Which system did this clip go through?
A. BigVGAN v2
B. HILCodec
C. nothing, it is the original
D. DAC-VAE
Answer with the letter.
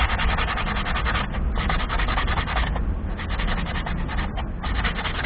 C